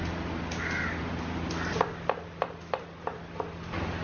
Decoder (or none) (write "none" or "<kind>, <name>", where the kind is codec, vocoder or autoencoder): none